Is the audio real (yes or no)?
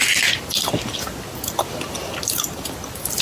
yes